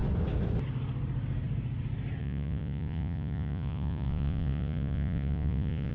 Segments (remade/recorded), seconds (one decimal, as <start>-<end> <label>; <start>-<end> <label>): 0.0-2.2 recorded; 2.2-5.9 remade

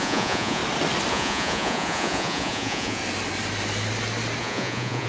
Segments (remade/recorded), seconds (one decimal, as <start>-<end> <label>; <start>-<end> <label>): 0.0-0.6 remade; 0.6-1.1 recorded; 1.1-3.0 remade; 3.0-4.4 recorded; 4.4-5.1 remade

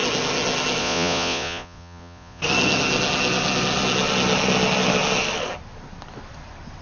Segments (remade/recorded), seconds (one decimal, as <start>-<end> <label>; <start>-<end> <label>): 0.0-0.8 recorded; 0.8-2.4 remade; 2.4-6.8 recorded

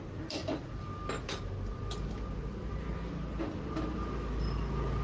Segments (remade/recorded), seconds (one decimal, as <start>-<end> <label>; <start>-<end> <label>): 0.0-5.0 recorded

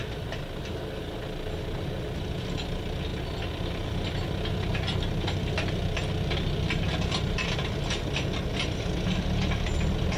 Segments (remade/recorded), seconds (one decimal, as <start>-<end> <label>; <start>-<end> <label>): 0.0-10.2 recorded

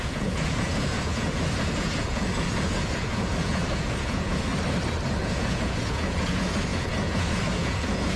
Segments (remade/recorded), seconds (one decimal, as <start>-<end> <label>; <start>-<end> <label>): 0.0-4.5 remade; 4.5-5.2 recorded; 5.2-8.2 remade